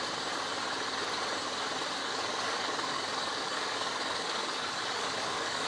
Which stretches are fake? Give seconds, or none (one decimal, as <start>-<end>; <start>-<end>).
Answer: 2.0-5.7